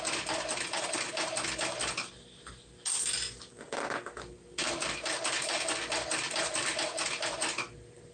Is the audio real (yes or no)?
yes